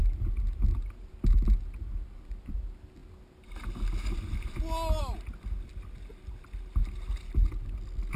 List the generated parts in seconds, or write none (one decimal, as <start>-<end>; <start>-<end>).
none